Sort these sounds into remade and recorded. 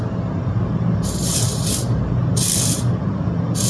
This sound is recorded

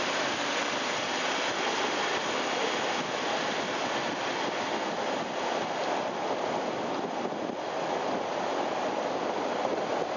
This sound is recorded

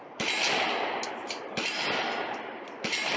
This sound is recorded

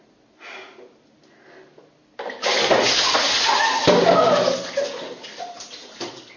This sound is recorded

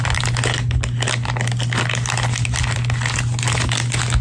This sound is recorded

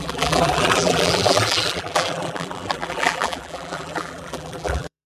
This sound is remade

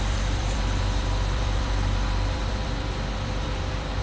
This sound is remade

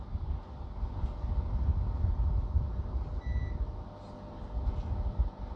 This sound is recorded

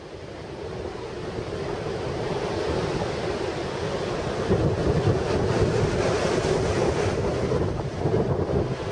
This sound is recorded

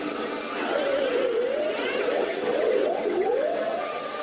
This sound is remade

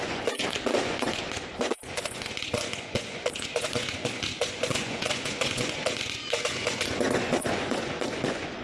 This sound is remade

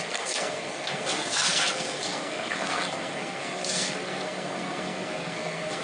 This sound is remade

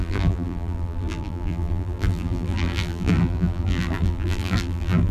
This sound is remade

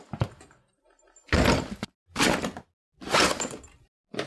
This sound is recorded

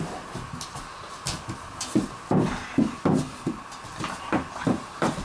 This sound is recorded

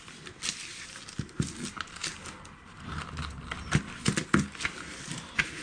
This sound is recorded